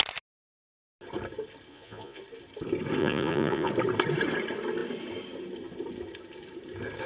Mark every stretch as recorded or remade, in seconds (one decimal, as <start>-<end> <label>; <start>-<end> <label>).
0.0-1.7 recorded; 1.7-2.2 remade; 2.2-3.0 recorded; 3.0-3.7 remade; 3.7-7.1 recorded